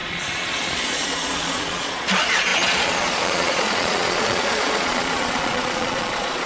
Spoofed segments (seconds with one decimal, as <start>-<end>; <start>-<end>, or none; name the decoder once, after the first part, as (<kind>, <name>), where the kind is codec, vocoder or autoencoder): 0.0-6.5 (vocoder, Vocos)